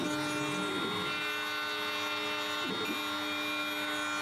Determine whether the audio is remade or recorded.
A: recorded